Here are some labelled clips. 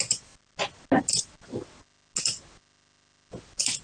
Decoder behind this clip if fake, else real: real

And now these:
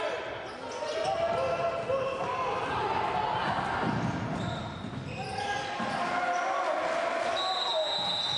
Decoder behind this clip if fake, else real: real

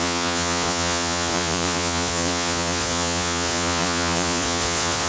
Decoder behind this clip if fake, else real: fake, vocoder, Vocos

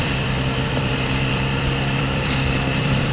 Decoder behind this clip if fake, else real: fake, vocoder, BigVGAN v2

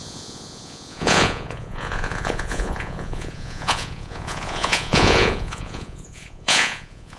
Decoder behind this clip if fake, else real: fake, vocoder, Vocos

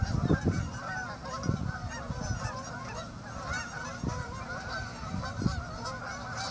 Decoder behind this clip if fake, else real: fake, vocoder, BigVGAN v2